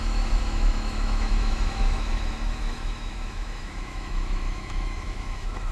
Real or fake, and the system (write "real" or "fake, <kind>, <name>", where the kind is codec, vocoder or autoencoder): fake, autoencoder, DAC-VAE